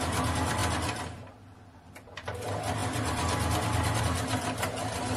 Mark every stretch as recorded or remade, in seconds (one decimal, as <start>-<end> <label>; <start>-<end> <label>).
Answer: 0.0-5.2 recorded